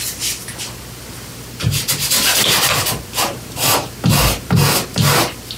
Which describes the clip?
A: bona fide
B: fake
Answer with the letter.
A